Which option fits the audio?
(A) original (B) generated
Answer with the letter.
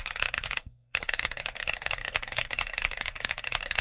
B